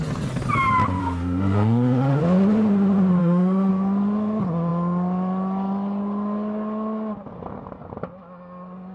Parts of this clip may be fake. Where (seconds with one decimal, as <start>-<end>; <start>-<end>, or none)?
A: 1.0-2.2; 3.2-3.7